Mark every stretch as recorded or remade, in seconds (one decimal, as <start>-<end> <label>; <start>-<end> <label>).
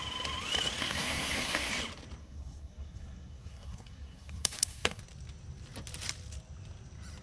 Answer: 0.0-0.8 recorded; 0.8-1.7 remade; 1.7-2.2 recorded; 2.2-5.0 remade; 5.0-7.2 recorded